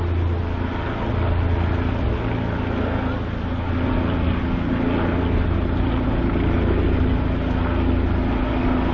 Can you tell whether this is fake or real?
real